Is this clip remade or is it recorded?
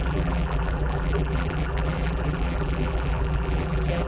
remade